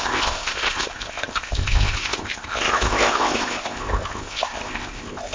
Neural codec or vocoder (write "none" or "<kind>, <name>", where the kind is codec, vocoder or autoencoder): codec, ZipCodec